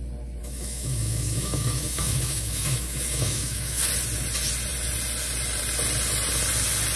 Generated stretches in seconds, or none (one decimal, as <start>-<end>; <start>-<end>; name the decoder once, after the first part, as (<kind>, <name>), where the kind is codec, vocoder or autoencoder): 0.4-3.9 (autoencoder, DAC-VAE)